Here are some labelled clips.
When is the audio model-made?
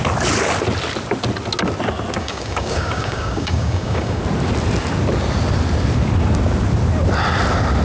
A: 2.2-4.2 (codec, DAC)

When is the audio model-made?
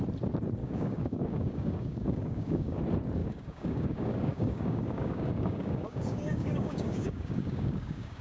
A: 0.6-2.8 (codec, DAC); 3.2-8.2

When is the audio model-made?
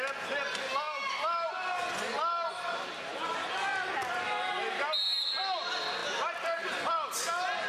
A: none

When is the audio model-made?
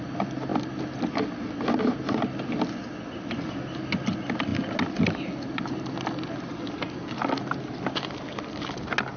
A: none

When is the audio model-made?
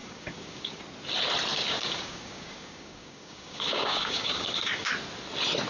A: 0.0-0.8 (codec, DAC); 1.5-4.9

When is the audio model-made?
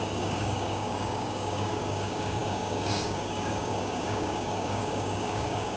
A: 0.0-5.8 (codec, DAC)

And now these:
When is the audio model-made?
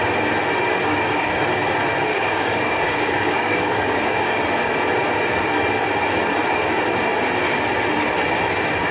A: 0.9-1.4 (codec, DAC); 2.1-4.4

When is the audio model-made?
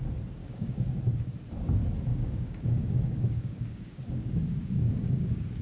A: 0.4-1.0 (codec, DAC); 2.1-5.6